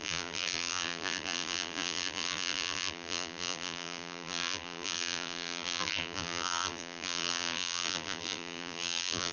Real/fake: fake